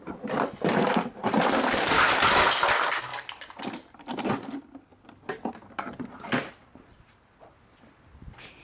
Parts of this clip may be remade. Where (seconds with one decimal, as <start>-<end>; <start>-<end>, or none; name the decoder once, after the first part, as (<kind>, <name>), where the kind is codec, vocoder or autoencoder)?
1.2-1.9 (vocoder, BigVGAN v2)